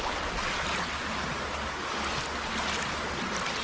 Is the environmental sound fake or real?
real